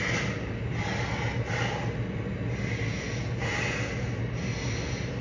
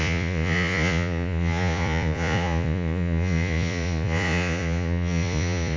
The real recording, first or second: first